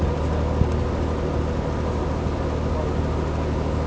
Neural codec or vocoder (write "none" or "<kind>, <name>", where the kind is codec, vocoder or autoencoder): none